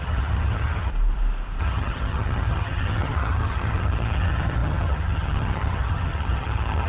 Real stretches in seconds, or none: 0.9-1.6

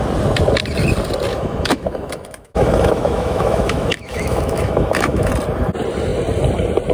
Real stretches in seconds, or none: 0.0-1.3; 5.3-6.9

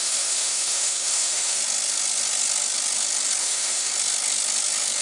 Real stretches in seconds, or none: 1.6-3.4; 3.9-5.0

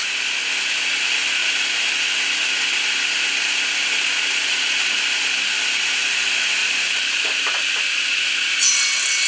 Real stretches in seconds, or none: 0.0-6.6; 8.1-9.3

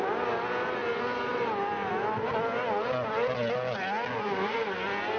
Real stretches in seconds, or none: 0.0-5.2

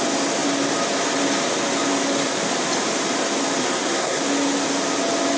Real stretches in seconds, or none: 0.0-3.6; 4.2-5.4